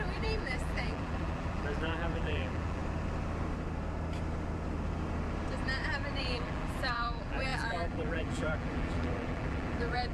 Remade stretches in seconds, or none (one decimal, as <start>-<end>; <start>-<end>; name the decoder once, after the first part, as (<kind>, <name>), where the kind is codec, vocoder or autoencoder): 0.0-2.8 (vocoder, BigVGAN v2); 6.2-10.1